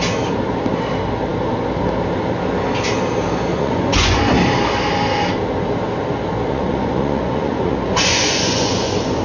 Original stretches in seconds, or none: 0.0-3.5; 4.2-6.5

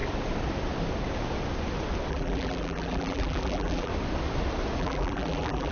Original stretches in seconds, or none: 0.0-2.1; 3.9-4.8

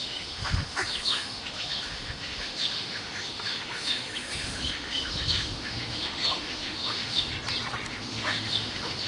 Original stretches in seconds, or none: 7.3-7.9